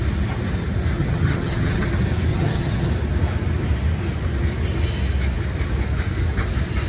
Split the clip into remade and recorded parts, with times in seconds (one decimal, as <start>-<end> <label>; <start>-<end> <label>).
0.0-1.0 recorded; 1.0-1.9 remade; 1.9-2.3 recorded; 2.3-2.9 remade; 2.9-6.9 recorded